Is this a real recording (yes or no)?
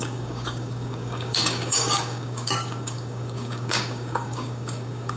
no